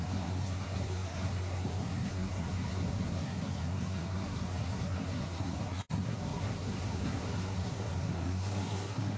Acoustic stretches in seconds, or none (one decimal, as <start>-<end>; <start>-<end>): none